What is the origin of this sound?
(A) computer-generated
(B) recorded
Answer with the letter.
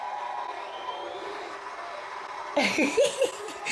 B